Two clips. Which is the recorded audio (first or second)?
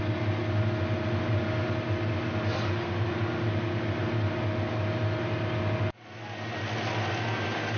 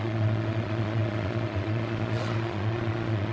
first